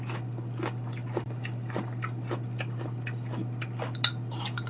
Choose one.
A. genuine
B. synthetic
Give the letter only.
A